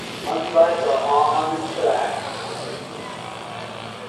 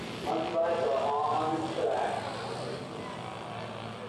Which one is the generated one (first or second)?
first